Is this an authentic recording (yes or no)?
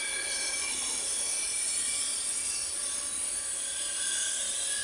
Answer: yes